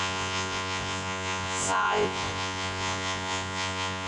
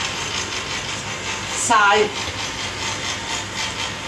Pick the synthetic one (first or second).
first